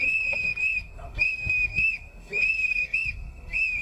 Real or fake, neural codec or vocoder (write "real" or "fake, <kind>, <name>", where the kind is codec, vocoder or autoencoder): fake, codec, SNAC